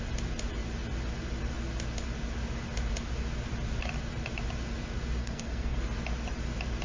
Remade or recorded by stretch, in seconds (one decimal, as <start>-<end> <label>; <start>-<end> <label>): 0.0-5.2 recorded; 5.2-5.8 remade; 5.8-6.8 recorded